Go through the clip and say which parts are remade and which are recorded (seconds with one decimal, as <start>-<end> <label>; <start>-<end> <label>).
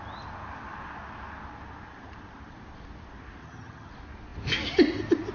0.0-3.4 recorded; 3.4-3.9 remade; 3.9-5.3 recorded